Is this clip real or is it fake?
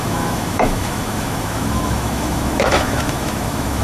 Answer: fake